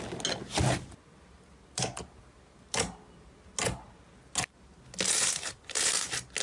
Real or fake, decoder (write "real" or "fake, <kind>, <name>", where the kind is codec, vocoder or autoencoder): real